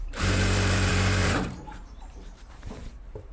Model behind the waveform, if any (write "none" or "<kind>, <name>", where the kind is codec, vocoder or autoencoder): vocoder, BigVGAN v2